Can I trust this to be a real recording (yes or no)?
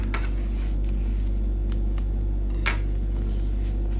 yes